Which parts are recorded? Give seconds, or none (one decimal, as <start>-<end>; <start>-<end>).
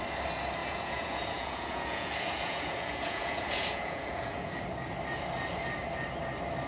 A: 0.0-0.6; 4.6-6.7